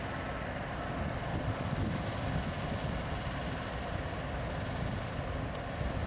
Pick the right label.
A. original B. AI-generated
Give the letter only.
A